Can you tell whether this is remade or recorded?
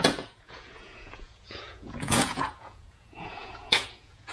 remade